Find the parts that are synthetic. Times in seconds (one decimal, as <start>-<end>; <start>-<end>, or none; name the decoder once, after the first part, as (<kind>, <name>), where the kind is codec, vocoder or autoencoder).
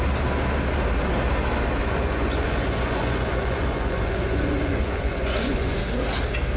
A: 1.8-5.8 (vocoder, Vocos)